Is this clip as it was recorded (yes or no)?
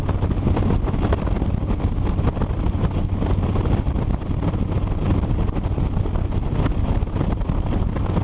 yes